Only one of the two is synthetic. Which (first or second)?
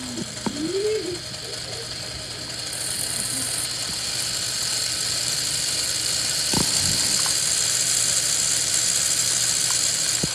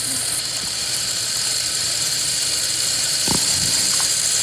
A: second